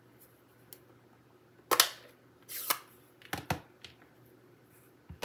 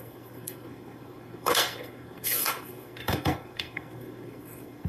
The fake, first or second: second